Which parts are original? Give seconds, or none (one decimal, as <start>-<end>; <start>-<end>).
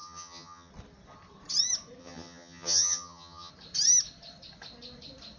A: 0.7-2.0; 3.5-5.4